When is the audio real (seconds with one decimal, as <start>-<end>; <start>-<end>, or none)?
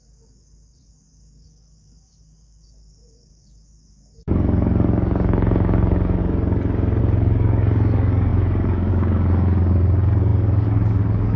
6.2-7.0